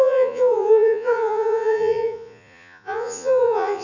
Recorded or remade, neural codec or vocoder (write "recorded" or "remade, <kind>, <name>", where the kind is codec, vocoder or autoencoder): remade, vocoder, Vocos